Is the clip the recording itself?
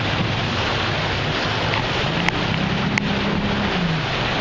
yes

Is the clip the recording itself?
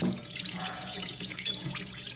no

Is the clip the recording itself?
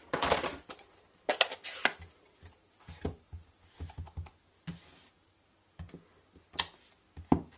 yes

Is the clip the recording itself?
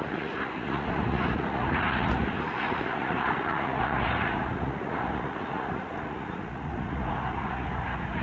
no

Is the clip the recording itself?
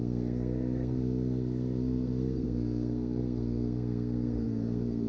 no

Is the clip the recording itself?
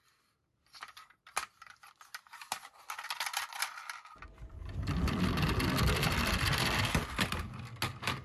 yes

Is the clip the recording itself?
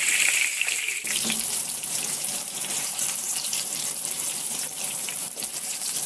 no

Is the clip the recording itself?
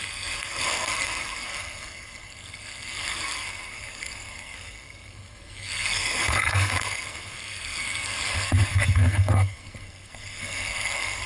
no